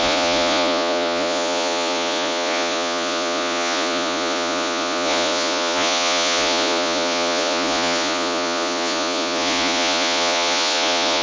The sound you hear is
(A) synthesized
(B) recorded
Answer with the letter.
A